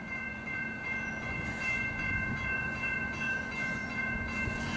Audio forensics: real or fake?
fake